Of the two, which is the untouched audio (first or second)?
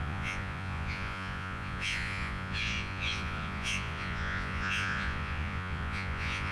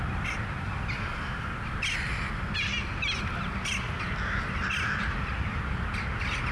second